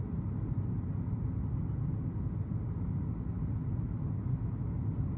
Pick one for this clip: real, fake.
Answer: real